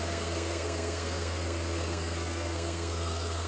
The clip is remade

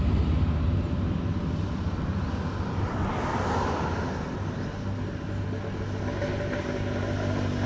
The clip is recorded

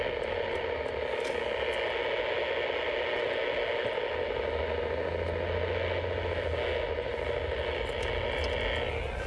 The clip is recorded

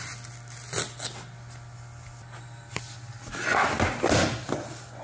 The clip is recorded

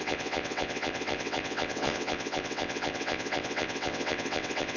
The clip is remade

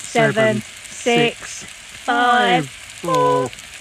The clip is recorded